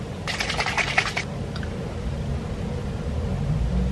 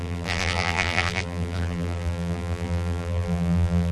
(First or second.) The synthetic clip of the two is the second